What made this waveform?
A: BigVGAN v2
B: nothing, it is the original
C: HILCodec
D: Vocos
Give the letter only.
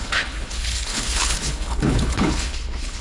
C